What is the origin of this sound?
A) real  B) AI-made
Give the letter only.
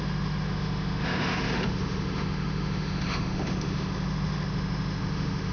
B